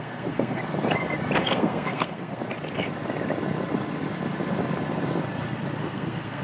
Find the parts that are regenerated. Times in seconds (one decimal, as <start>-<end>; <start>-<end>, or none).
0.0-0.6; 1.4-2.4; 5.8-6.4